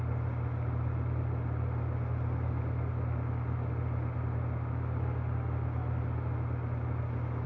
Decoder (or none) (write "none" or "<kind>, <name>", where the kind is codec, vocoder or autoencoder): none